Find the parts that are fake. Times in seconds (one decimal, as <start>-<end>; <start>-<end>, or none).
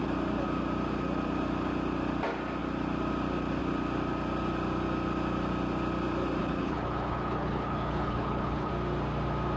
6.4-8.7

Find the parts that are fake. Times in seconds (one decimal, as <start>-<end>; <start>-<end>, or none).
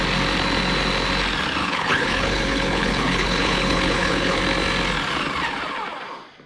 1.6-4.4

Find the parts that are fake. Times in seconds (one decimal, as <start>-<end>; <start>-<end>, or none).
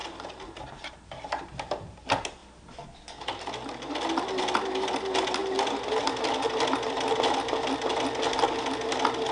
none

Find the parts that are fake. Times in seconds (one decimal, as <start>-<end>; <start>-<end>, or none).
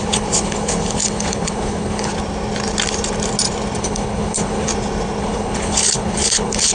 0.0-2.1; 3.8-4.7; 5.2-6.7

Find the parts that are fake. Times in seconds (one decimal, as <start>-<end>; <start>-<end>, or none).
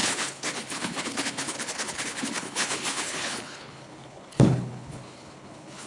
0.0-5.9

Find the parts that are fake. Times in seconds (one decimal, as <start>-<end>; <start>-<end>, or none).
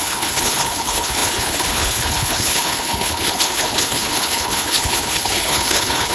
0.0-6.1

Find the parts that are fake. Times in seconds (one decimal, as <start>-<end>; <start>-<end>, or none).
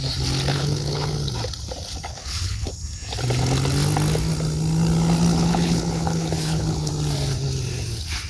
0.5-1.1; 2.1-2.7; 5.3-6.9